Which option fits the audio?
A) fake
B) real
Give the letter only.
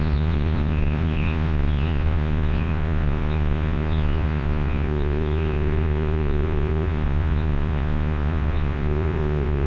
A